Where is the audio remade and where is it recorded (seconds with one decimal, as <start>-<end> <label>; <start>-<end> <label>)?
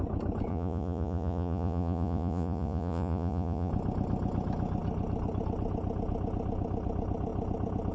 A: 0.0-0.5 recorded; 0.5-3.7 remade; 3.7-7.9 recorded